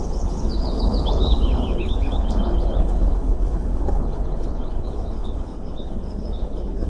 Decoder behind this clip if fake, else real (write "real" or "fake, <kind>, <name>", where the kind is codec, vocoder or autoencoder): fake, codec, HILCodec